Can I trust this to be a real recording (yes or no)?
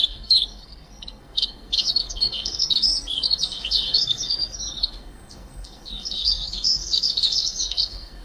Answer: no